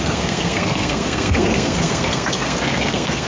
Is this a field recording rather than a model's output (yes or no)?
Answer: no